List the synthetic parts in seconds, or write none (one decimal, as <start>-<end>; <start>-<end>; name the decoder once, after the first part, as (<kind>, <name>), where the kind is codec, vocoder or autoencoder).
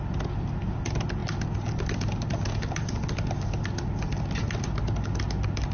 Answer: none